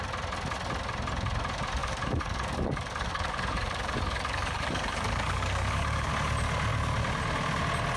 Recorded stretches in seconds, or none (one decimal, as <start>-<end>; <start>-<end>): 0.0-1.8; 6.1-8.0